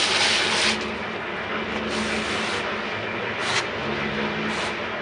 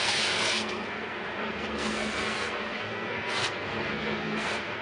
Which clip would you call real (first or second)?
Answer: first